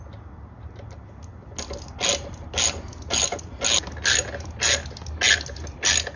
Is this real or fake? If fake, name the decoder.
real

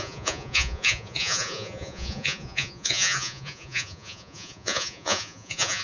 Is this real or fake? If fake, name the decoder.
fake, vocoder, Vocos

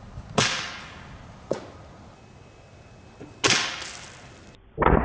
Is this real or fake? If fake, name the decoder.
real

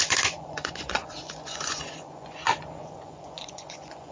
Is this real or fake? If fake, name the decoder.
fake, vocoder, Vocos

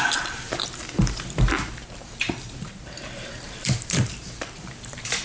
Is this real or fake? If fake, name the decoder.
fake, vocoder, BigVGAN v2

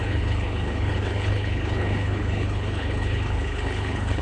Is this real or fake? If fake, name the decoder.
fake, codec, HILCodec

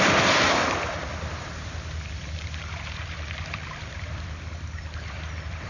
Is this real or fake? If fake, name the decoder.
fake, vocoder, BigVGAN v2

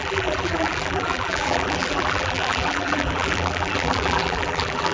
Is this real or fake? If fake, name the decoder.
fake, vocoder, BigVGAN v2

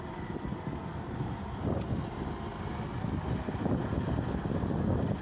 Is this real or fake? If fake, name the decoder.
real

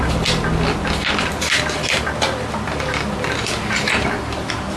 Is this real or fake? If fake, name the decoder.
real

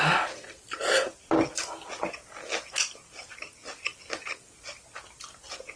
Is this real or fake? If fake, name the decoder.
real